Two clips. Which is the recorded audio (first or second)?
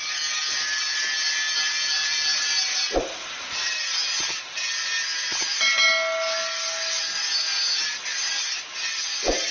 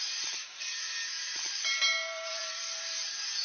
first